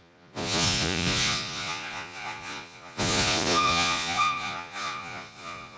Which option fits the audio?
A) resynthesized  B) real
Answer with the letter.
A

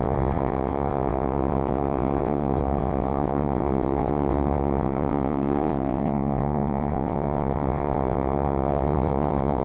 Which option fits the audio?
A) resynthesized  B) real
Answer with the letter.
A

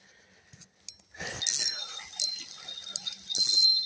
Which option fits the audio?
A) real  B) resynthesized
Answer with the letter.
A